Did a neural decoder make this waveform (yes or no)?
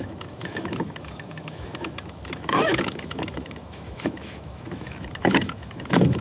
yes